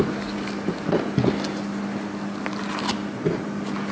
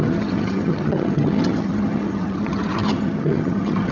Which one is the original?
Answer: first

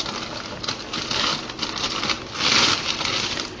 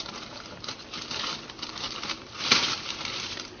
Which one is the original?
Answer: first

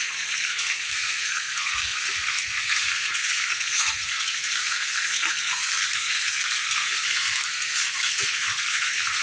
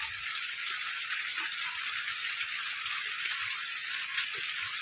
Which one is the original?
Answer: second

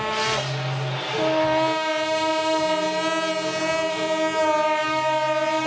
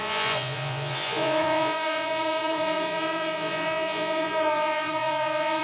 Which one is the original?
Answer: first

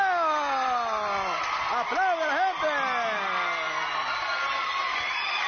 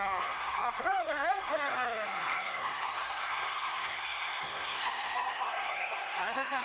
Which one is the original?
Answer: first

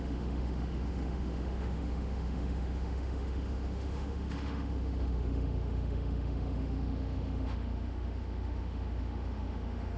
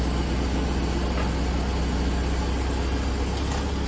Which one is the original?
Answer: second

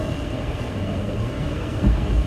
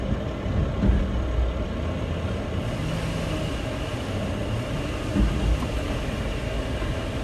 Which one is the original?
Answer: second